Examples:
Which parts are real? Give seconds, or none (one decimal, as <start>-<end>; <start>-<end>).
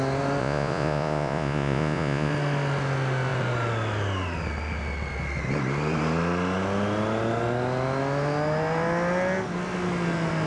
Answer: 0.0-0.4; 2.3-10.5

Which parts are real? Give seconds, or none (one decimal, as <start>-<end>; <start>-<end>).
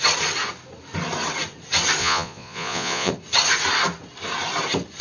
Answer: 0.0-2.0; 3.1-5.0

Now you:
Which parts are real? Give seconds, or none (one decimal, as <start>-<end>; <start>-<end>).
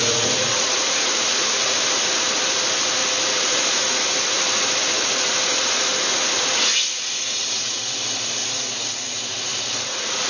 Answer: none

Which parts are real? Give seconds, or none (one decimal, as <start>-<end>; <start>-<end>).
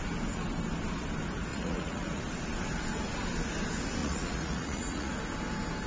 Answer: 0.0-1.5; 2.2-4.0; 5.2-5.9